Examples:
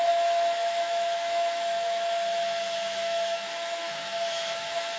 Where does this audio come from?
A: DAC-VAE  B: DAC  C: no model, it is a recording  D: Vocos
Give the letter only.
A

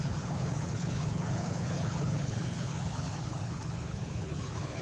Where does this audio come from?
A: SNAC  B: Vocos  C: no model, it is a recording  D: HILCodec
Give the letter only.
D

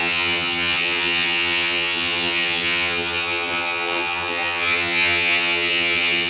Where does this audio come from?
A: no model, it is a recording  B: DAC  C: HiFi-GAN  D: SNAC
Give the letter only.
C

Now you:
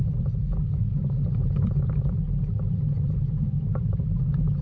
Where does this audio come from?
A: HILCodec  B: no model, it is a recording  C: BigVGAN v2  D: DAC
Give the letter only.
B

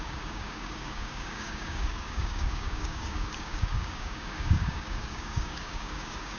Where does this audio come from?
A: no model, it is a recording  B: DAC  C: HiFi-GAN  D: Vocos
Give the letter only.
B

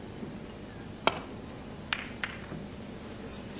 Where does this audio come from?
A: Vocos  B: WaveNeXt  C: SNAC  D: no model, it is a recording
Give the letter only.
D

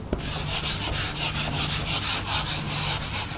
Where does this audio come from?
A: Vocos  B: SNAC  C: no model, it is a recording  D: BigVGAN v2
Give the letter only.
C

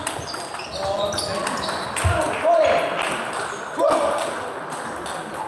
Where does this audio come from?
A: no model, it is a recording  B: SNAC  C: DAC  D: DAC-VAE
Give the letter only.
A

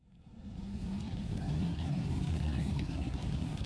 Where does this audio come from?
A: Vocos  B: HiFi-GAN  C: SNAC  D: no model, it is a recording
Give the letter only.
C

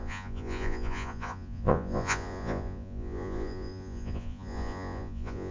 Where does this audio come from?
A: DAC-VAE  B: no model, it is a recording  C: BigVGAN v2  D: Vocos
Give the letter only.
D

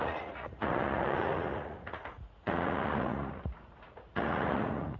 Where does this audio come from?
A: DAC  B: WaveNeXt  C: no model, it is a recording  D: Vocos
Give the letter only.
D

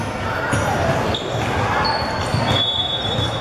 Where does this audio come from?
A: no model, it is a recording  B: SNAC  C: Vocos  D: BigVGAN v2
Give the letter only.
A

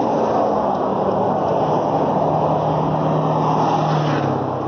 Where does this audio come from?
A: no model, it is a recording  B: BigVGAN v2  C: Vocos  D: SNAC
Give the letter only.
A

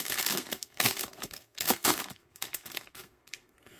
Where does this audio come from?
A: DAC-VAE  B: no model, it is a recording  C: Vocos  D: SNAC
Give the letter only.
D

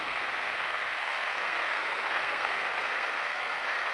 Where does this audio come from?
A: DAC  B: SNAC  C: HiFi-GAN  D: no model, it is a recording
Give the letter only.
B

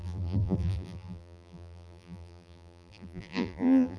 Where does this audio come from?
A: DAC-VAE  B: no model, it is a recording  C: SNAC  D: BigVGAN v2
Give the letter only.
D